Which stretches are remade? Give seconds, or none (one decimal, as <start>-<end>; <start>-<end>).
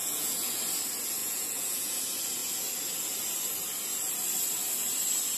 0.0-0.6; 1.2-2.0